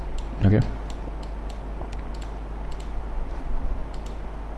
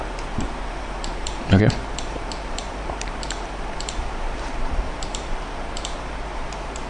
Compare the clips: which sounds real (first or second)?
first